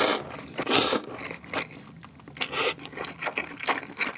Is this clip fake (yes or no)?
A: no